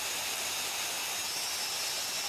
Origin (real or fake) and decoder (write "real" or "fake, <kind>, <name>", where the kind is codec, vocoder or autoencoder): real